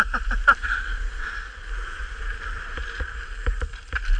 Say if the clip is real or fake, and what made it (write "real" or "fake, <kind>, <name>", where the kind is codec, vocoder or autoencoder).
fake, vocoder, BigVGAN v2